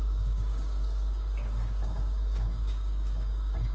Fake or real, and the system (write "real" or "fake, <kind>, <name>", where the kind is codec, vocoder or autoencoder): fake, codec, DAC